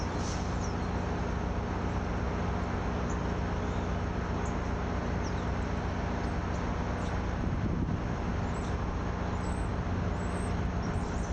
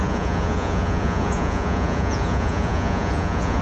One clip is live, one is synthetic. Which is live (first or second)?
first